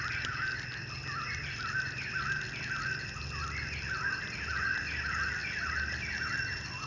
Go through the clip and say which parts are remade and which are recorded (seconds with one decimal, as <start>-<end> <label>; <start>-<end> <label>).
0.0-6.9 recorded